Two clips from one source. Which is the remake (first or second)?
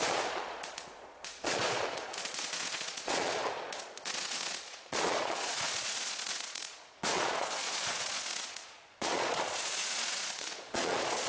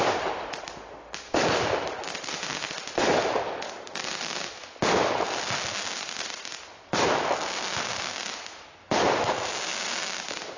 first